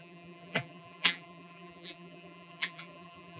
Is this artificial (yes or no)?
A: yes